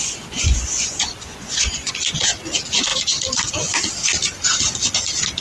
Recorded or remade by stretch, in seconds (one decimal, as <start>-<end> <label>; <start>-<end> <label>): 0.0-1.9 remade; 1.9-5.4 recorded